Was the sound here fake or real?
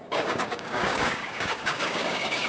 fake